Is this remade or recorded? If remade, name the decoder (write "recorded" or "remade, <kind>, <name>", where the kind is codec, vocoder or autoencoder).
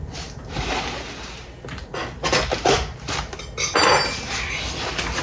recorded